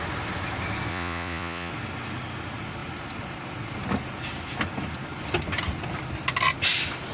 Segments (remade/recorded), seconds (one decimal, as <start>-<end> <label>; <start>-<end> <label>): 0.0-0.9 recorded; 0.9-1.7 remade; 1.7-7.1 recorded

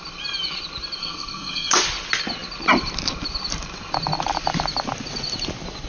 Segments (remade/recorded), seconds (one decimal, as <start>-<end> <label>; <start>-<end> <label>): 0.0-1.0 recorded; 1.0-1.7 remade; 1.7-5.9 recorded

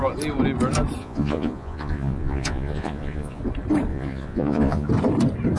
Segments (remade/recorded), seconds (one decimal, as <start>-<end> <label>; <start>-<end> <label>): 0.0-1.0 recorded; 1.0-3.4 remade; 3.4-3.9 recorded; 3.9-4.9 remade; 4.9-5.6 recorded

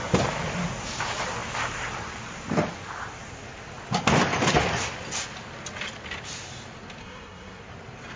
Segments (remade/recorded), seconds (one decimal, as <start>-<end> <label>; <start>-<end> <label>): 0.0-7.0 recorded; 7.0-7.6 remade; 7.6-8.2 recorded

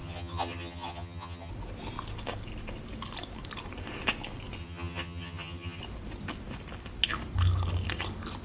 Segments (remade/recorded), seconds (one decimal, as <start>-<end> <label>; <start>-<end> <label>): 0.0-1.5 remade; 1.5-4.6 recorded; 4.6-5.8 remade; 5.8-8.4 recorded

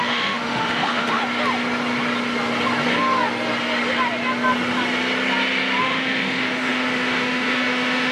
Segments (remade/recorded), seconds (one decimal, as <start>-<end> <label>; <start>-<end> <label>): 0.0-1.2 remade; 1.2-5.8 recorded; 5.8-8.1 remade

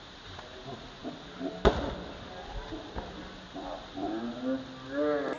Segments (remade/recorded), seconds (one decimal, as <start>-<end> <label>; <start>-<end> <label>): 0.0-5.4 recorded